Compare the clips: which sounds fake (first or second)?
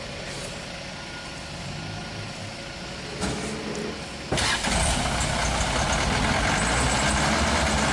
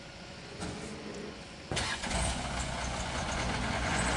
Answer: second